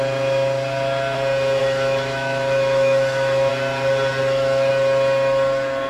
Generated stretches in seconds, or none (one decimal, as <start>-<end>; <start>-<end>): 1.6-3.5; 4.2-4.7